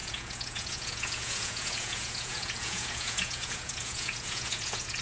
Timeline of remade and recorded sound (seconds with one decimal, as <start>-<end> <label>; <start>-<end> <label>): 0.0-5.0 remade